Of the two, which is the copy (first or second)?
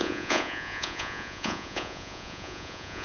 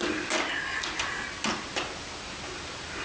first